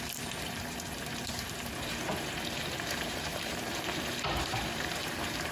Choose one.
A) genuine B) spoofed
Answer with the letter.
B